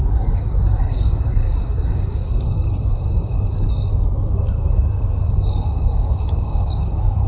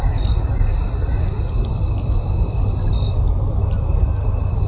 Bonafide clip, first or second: second